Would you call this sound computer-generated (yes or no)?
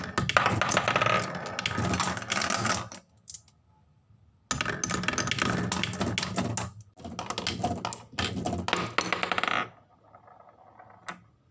no